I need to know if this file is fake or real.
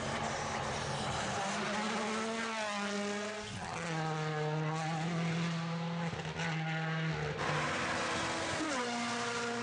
real